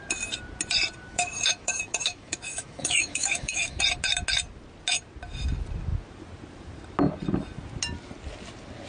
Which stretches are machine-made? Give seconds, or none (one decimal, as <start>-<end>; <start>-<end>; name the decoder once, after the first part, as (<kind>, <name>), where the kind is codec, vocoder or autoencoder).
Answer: 1.1-3.8 (autoencoder, DAC-VAE)

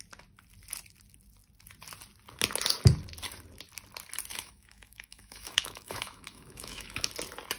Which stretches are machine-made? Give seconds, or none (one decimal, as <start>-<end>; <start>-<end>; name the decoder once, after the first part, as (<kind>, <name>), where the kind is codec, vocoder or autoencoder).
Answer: 4.3-7.1 (autoencoder, DAC-VAE)

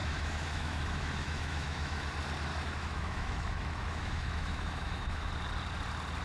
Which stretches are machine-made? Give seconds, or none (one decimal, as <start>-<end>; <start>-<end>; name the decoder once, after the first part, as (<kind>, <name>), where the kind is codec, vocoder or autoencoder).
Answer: 0.0-2.1 (autoencoder, DAC-VAE); 2.5-5.3

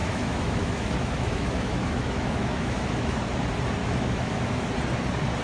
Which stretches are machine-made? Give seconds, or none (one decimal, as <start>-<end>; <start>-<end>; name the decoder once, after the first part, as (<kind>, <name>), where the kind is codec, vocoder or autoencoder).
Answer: 0.0-3.2 (autoencoder, DAC-VAE); 3.8-4.7

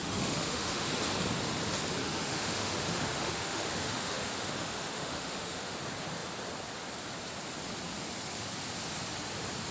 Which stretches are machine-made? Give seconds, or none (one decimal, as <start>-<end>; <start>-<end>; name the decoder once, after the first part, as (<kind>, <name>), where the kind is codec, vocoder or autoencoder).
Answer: 0.0-0.9 (autoencoder, DAC-VAE); 2.0-5.8

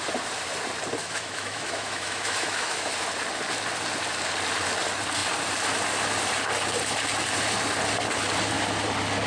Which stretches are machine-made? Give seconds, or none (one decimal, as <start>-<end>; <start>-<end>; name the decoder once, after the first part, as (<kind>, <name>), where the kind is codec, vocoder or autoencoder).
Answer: 1.0-2.9 (autoencoder, DAC-VAE)

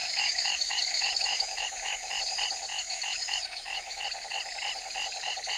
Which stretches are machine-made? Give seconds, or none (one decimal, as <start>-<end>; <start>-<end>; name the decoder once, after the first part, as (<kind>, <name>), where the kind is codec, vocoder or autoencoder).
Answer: 0.0-2.1 (autoencoder, DAC-VAE); 2.7-4.0